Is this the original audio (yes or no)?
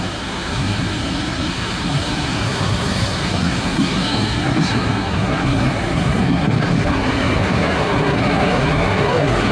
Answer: no